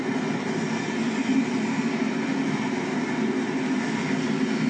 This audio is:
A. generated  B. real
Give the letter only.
B